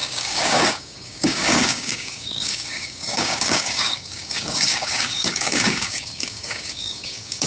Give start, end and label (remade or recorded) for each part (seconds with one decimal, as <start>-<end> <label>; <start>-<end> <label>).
0.0-7.5 remade